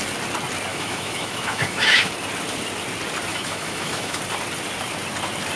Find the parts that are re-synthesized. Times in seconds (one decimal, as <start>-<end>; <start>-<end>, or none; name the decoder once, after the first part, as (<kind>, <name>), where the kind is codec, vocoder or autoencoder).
0.7-2.1 (autoencoder, DAC-VAE); 3.3-4.2